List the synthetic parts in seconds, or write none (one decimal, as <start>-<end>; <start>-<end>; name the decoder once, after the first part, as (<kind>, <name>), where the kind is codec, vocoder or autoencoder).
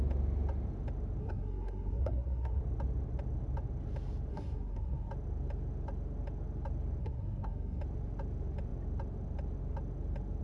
1.2-2.6 (codec, SNAC); 4.3-5.1; 7.0-7.8